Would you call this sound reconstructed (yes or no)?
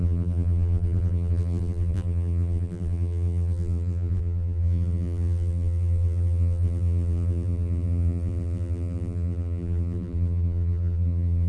yes